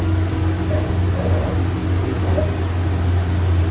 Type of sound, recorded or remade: recorded